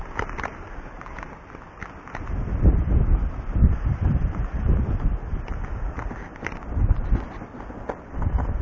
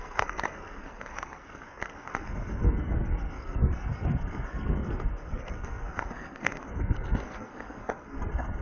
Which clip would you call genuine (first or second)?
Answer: first